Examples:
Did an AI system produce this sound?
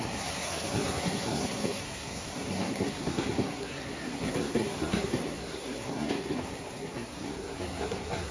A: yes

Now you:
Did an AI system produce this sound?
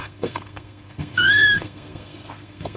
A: yes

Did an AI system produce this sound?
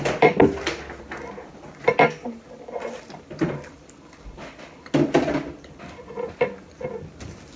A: no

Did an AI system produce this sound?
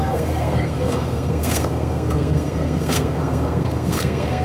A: yes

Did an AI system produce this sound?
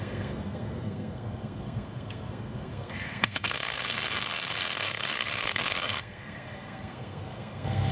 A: yes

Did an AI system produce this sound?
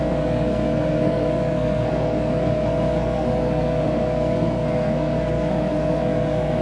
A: yes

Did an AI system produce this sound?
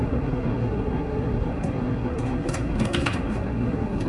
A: yes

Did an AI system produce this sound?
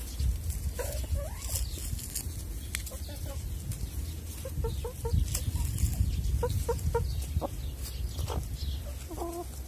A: no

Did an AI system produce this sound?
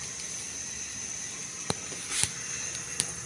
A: no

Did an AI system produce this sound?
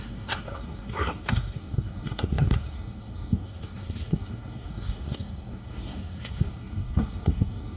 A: yes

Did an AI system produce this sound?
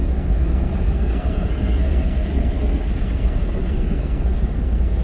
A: yes